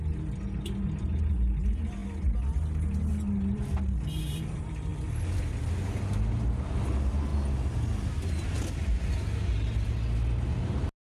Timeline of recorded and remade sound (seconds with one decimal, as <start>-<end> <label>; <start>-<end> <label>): 0.0-11.0 recorded